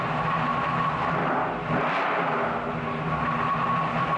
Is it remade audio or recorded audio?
recorded